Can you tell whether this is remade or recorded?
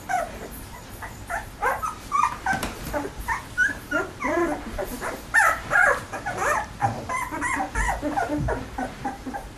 remade